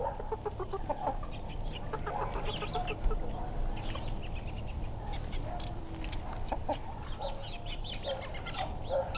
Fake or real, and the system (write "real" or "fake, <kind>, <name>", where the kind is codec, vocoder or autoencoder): real